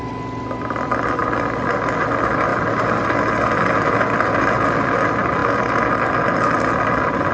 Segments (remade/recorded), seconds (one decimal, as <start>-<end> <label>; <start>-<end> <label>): 0.0-1.2 remade; 1.2-1.7 recorded; 1.7-2.5 remade; 2.5-3.9 recorded; 3.9-5.4 remade; 5.4-5.9 recorded; 5.9-7.3 remade